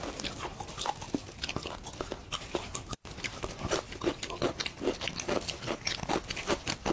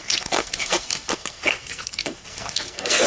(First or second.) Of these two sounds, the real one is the first